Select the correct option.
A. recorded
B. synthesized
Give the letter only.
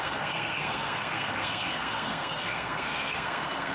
B